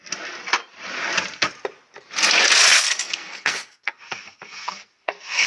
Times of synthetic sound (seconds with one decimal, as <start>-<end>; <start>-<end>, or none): 2.7-5.5